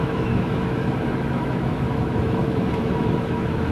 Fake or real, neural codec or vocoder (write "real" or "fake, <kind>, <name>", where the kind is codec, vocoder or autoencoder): fake, autoencoder, DAC-VAE